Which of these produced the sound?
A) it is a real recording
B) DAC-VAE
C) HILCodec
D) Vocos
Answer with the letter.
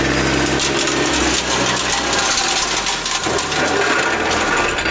A